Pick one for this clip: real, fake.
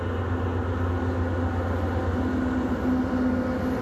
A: real